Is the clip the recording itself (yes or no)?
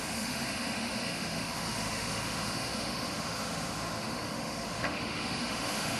no